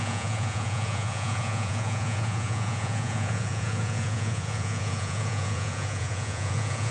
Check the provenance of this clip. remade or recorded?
remade